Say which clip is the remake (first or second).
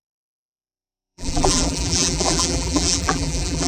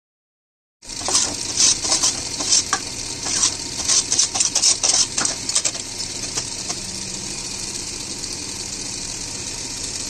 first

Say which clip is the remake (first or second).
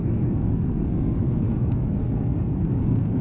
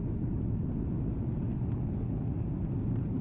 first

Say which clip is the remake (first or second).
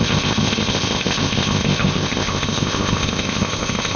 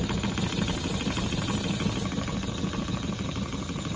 first